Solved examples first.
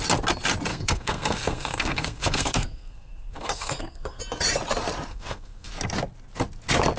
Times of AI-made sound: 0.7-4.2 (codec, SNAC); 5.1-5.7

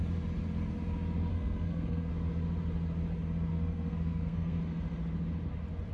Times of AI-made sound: 1.3-2.1 (codec, SNAC); 3.5-4.6

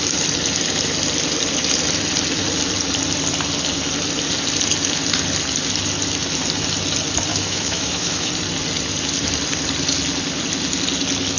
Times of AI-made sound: 7.3-8.3 (autoencoder, DAC-VAE)